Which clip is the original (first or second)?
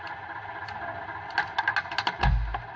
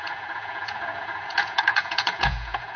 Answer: first